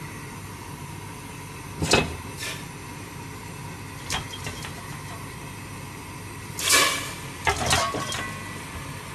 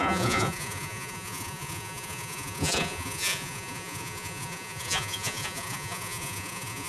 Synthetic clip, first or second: second